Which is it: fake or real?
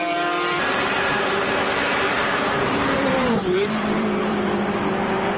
fake